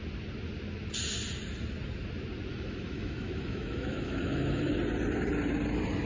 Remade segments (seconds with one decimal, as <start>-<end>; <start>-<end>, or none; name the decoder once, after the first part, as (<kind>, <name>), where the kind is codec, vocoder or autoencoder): 2.5-4.7 (autoencoder, DAC-VAE)